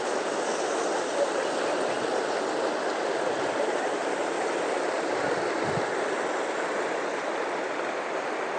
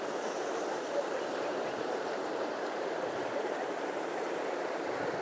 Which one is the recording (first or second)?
first